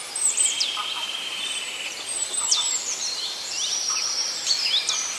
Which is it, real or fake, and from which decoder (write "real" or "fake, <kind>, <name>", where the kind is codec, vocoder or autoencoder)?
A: fake, vocoder, BigVGAN v2